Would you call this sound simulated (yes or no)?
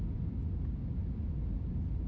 no